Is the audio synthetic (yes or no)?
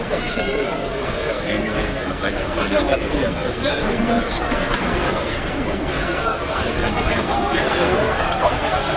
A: yes